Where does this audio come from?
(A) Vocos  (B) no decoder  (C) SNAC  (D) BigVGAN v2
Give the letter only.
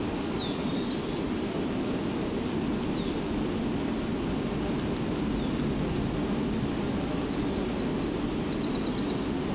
B